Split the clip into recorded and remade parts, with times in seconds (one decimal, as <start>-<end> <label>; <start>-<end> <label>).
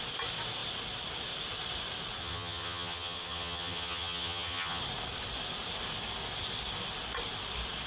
0.0-2.2 recorded; 2.2-4.8 remade; 4.8-7.9 recorded